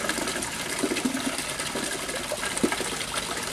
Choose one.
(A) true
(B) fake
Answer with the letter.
A